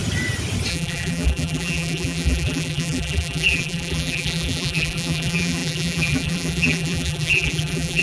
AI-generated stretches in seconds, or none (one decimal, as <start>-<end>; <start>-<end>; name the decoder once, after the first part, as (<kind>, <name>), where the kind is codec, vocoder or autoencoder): 0.7-8.0 (vocoder, BigVGAN v2)